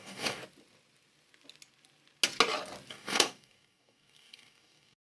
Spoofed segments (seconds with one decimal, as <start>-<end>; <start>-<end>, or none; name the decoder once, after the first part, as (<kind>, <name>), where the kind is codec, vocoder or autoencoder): 0.0-0.4 (codec, DAC); 2.9-5.0